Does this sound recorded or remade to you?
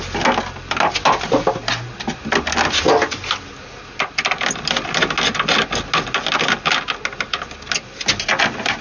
recorded